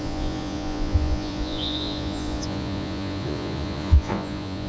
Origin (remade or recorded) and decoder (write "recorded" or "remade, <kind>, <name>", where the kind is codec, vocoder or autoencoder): remade, vocoder, Vocos